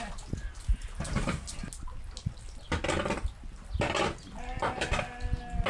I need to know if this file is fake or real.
real